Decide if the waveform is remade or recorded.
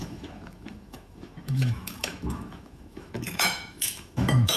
remade